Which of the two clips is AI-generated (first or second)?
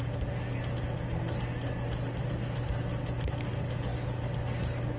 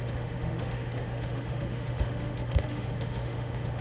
second